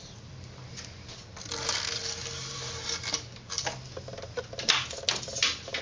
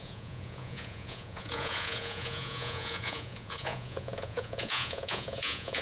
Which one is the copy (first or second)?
second